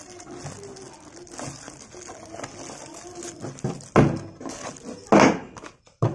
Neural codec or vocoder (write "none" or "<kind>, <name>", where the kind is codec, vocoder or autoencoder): none